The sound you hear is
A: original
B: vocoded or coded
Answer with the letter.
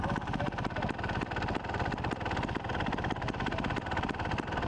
A